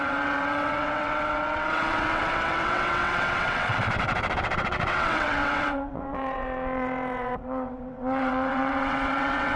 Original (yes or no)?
no